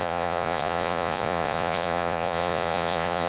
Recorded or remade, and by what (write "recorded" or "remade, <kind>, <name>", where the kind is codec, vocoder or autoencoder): remade, vocoder, Vocos